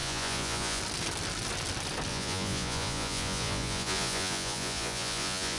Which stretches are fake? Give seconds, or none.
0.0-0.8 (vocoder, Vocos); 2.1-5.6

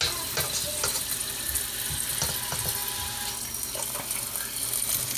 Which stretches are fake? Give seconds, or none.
none

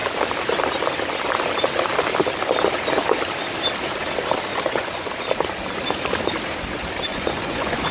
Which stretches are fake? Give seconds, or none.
4.5-5.1 (vocoder, Vocos); 7.1-7.9

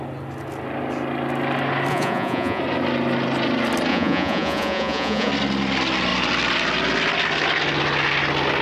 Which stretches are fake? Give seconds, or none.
1.9-2.6 (vocoder, Vocos); 3.9-5.3

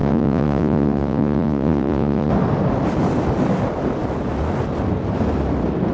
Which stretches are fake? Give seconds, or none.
0.0-2.3 (vocoder, Vocos)